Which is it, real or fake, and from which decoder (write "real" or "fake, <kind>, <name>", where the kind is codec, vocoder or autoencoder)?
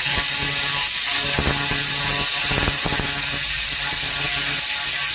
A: real